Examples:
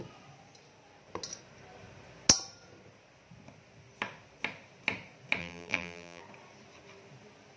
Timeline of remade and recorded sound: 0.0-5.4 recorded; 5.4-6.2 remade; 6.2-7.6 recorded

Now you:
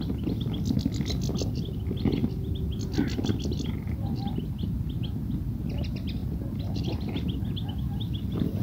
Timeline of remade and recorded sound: 0.0-8.6 recorded

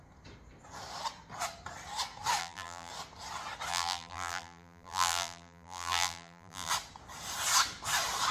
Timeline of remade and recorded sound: 0.0-2.4 recorded; 2.4-2.9 remade; 2.9-3.7 recorded; 3.7-6.7 remade; 6.7-8.3 recorded

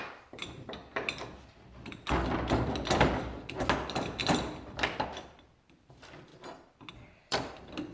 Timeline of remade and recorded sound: 0.0-0.8 remade; 0.8-4.2 recorded; 4.2-6.3 remade; 6.3-6.9 recorded; 6.9-7.9 remade

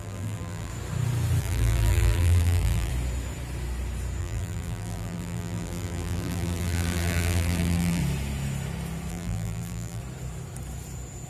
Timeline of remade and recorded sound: 0.0-0.7 remade; 0.7-1.4 recorded; 1.4-2.9 remade; 2.9-4.2 recorded; 4.2-8.0 remade; 8.0-9.1 recorded; 9.1-10.0 remade; 10.0-11.3 recorded

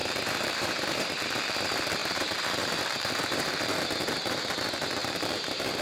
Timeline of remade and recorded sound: 0.0-1.3 remade; 1.3-2.0 recorded; 2.0-4.5 remade; 4.5-5.0 recorded; 5.0-5.8 remade